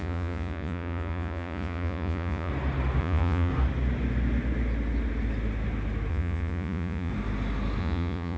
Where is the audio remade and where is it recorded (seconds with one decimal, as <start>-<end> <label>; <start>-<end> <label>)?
0.0-2.5 remade; 2.5-3.0 recorded; 3.0-3.5 remade; 3.5-6.1 recorded; 6.1-7.1 remade; 7.1-7.8 recorded; 7.8-8.4 remade